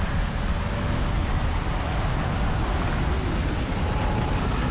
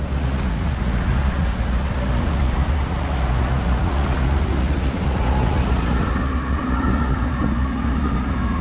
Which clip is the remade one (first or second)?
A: second